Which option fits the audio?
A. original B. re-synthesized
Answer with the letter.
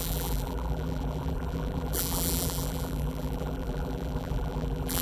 B